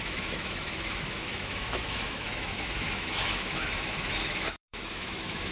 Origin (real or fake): fake